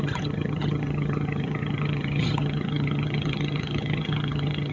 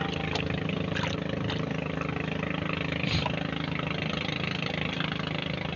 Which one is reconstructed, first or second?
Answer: first